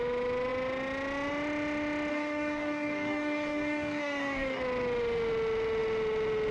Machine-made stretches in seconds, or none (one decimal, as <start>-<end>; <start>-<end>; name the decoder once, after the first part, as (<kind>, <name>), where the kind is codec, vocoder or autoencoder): 2.1-4.6 (codec, DAC)